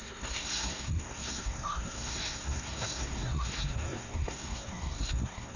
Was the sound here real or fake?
fake